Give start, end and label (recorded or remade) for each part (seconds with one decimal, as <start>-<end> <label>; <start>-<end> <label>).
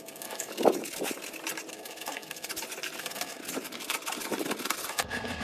0.0-0.5 remade; 0.5-1.7 recorded; 1.7-2.5 remade; 2.5-3.0 recorded; 3.0-3.4 remade; 3.4-4.9 recorded; 4.9-5.4 remade